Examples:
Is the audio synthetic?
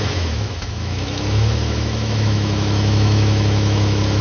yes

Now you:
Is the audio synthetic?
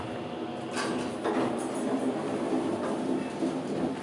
no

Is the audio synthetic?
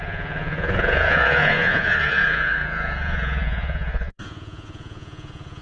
yes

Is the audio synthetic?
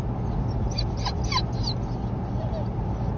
no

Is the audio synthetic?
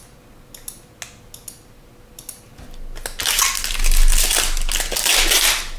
no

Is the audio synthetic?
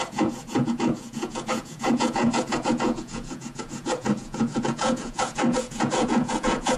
yes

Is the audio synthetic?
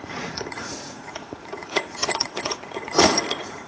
yes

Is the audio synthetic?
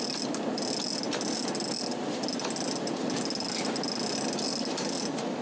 no